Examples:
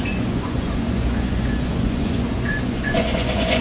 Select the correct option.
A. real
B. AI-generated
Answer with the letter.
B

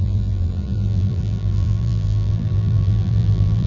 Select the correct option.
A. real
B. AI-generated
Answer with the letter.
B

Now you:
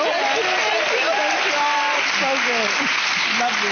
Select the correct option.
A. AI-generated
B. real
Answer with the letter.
B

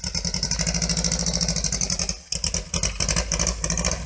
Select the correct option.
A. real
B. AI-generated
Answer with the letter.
A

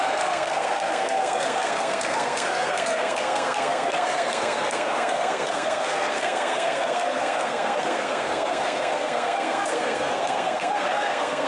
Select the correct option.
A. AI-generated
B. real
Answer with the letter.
A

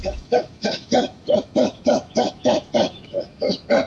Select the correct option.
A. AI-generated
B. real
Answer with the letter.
A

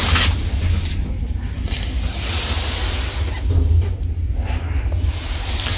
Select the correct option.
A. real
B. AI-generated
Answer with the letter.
A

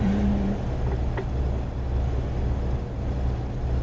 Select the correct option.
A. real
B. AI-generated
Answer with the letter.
A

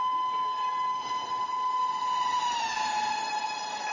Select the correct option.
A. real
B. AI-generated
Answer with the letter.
A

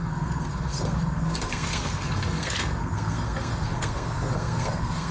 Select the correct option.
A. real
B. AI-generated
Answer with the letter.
B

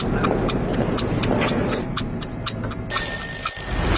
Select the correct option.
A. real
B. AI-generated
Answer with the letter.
A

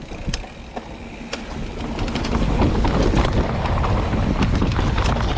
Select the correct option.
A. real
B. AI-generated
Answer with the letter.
A